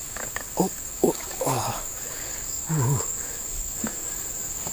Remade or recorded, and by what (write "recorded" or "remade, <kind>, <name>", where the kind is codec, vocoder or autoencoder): remade, codec, DAC